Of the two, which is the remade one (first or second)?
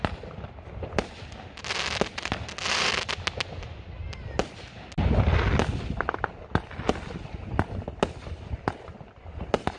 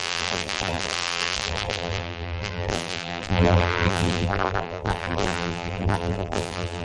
second